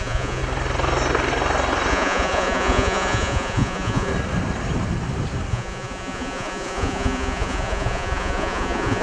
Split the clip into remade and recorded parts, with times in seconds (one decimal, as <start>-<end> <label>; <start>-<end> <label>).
0.0-0.4 remade; 0.4-1.9 recorded; 1.9-4.1 remade; 4.1-5.5 recorded; 5.5-9.0 remade